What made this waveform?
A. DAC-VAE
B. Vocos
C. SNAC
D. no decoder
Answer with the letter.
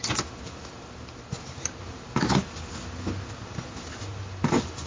D